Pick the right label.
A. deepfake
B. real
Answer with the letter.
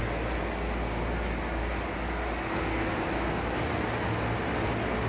B